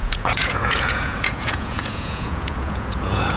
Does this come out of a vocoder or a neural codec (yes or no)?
yes